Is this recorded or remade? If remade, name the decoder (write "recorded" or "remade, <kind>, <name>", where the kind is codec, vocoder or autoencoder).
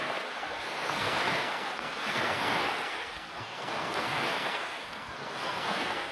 remade, codec, SNAC